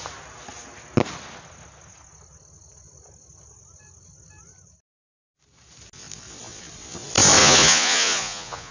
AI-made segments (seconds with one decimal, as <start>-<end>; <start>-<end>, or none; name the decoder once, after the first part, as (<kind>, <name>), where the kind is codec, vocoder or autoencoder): 7.4-8.7 (vocoder, Vocos)